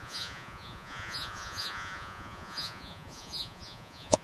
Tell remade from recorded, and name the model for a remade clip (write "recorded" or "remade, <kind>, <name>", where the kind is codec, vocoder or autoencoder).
remade, vocoder, Vocos